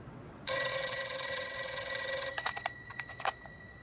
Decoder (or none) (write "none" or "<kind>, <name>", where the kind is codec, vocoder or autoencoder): vocoder, WaveNeXt